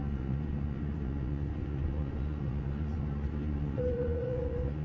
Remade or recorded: remade